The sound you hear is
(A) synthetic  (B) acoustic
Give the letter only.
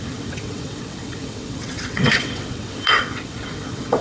A